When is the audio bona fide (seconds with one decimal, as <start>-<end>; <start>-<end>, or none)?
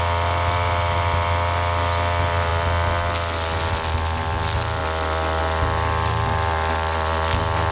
0.0-7.7